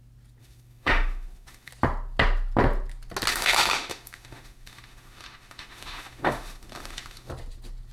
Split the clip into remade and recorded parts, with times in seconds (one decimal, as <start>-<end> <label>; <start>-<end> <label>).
0.0-0.4 recorded; 0.4-1.7 remade; 1.7-3.3 recorded; 3.3-7.3 remade; 7.3-7.9 recorded

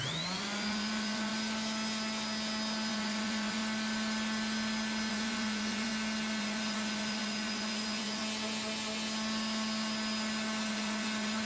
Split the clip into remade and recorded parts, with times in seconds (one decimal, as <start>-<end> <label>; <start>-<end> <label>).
0.0-1.3 remade; 1.3-2.9 recorded; 2.9-3.6 remade; 3.6-5.1 recorded; 5.1-5.9 remade; 5.9-6.4 recorded; 6.4-8.2 remade; 8.2-10.7 recorded; 10.7-11.4 remade

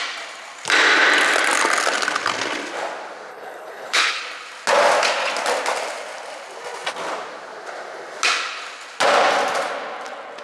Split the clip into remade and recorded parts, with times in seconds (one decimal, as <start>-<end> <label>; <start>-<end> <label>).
0.0-3.3 recorded; 3.3-4.2 remade; 4.2-10.4 recorded

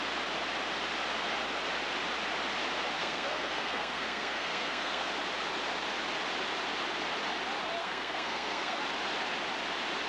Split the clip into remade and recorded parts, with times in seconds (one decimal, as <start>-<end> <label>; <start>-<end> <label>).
0.0-3.0 recorded; 3.0-5.1 remade; 5.1-7.8 recorded; 7.8-8.8 remade; 8.8-10.1 recorded